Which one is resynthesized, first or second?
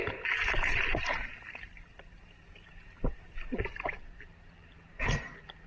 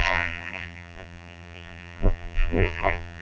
second